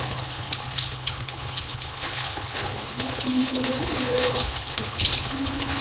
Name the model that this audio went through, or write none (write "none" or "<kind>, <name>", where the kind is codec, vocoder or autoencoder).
codec, HILCodec